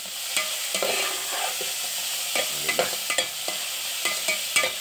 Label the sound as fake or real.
real